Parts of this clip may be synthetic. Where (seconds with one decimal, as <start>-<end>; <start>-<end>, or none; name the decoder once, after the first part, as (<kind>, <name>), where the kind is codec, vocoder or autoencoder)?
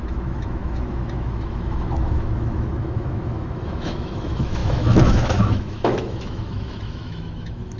0.0-7.8 (autoencoder, DAC-VAE)